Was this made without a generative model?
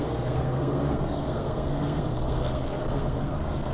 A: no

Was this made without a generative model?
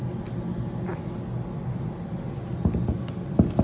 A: yes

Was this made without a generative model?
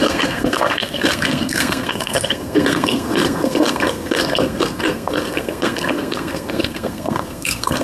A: no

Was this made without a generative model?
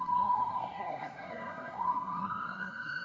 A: no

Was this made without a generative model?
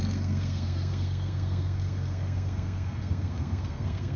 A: no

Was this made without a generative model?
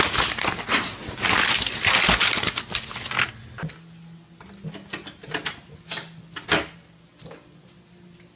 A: yes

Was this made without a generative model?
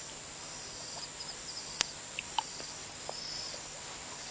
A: yes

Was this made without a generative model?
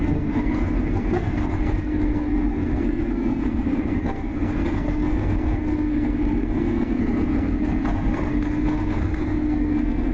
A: no